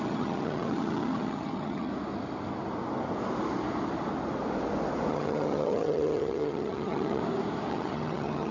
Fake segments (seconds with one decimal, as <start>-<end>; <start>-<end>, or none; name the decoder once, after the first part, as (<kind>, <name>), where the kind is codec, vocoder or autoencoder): 0.0-1.9 (vocoder, HiFi-GAN); 5.1-7.2; 7.7-8.5